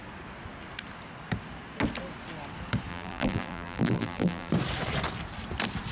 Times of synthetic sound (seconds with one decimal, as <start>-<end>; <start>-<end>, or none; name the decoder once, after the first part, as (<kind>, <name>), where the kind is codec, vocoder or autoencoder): 2.9-4.5 (vocoder, BigVGAN v2)